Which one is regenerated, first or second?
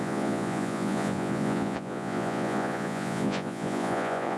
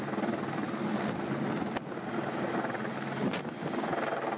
first